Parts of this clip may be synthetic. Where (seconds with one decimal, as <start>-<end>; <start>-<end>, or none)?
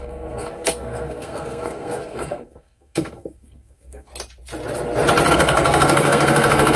0.0-4.1; 5.3-6.8